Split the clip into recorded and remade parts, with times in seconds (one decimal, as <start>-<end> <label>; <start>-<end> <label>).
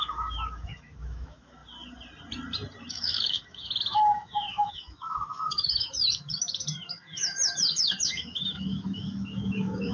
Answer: 0.0-1.6 remade; 1.6-2.9 recorded; 2.9-9.9 remade